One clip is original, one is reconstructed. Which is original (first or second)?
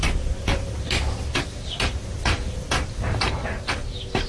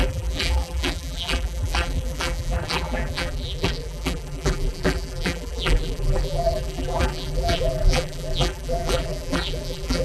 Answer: first